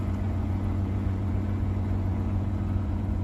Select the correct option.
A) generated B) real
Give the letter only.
A